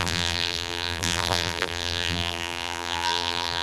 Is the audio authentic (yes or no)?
no